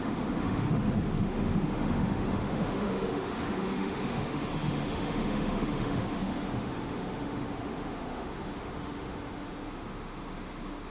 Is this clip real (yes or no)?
no